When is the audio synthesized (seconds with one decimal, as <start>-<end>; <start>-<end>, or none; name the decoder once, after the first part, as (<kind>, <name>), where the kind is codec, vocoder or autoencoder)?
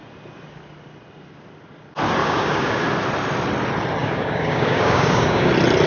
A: 2.2-2.8 (codec, DAC); 4.0-5.5